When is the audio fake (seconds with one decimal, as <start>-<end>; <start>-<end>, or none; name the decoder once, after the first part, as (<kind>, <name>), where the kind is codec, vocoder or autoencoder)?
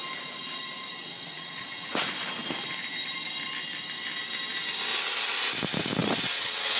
0.9-1.9 (vocoder, WaveNeXt); 6.0-6.8